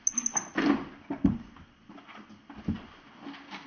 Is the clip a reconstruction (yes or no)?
no